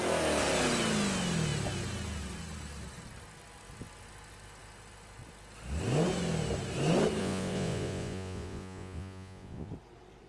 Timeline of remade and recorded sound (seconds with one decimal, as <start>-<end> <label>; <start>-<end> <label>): 0.0-7.2 recorded; 7.2-9.7 remade; 9.7-10.3 recorded